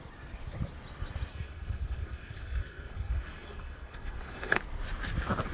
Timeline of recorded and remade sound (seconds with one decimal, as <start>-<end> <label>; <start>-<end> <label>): 0.0-1.3 recorded; 1.3-4.6 remade; 4.6-5.5 recorded